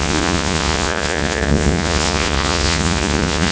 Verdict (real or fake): fake